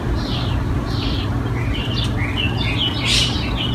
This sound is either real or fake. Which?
real